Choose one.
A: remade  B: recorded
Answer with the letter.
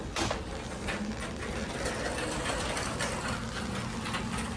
B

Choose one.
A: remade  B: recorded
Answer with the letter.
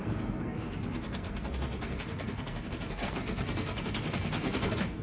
A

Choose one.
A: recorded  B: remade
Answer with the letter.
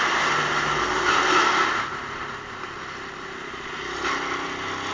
A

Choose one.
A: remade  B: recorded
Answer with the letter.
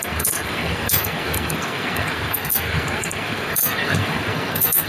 A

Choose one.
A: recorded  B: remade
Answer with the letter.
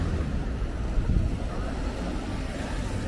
A